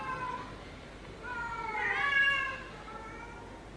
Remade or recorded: recorded